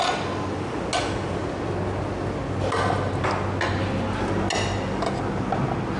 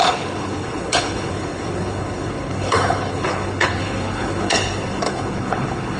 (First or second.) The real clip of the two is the first